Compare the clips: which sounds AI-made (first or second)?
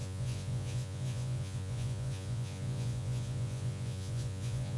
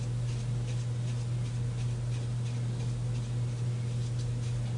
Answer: first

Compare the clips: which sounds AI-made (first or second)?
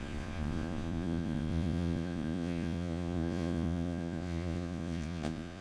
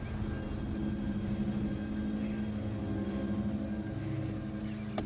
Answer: first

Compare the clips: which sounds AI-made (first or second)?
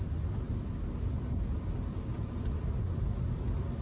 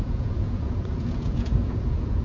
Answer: second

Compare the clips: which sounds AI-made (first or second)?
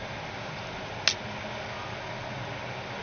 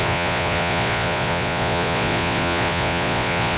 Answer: second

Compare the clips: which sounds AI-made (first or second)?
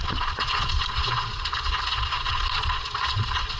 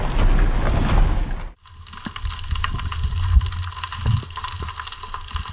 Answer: first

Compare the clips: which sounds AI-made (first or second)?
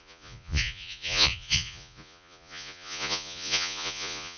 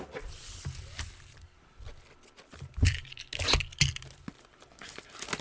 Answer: first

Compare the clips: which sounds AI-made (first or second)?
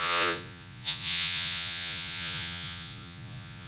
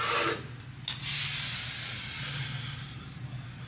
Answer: first